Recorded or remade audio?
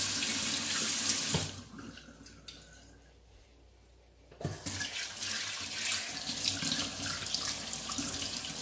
recorded